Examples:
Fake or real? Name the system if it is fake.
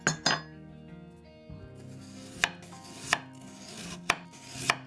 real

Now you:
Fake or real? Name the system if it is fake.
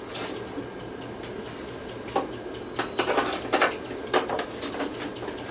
real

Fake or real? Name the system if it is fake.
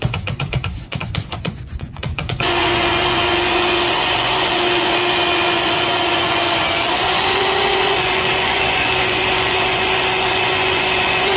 fake, vocoder, Vocos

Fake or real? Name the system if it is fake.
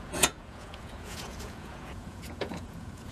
fake, vocoder, Vocos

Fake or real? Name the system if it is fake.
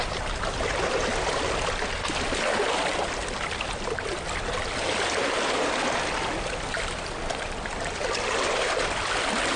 real